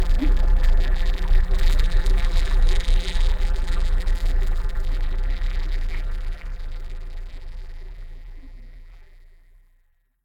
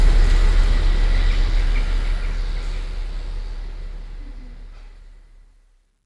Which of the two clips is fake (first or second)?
first